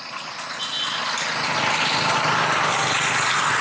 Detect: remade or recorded recorded